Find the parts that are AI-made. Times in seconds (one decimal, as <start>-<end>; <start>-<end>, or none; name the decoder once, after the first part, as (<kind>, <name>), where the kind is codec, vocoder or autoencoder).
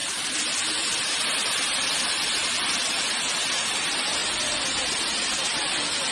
none